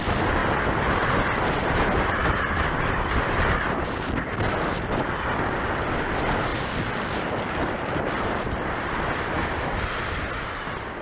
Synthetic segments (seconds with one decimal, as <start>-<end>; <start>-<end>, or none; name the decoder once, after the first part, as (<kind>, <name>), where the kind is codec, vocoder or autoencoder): 6.5-10.2 (vocoder, BigVGAN v2)